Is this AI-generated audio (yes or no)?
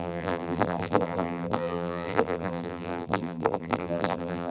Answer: yes